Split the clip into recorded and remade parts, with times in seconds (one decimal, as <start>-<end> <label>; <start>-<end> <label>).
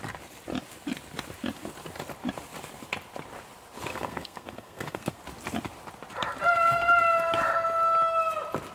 0.0-3.9 recorded; 3.9-5.2 remade; 5.2-8.7 recorded